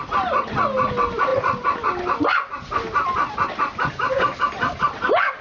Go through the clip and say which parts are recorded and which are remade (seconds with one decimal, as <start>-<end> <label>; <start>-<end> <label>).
0.0-5.4 recorded